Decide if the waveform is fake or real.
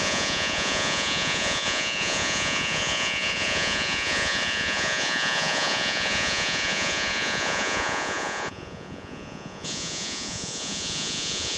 fake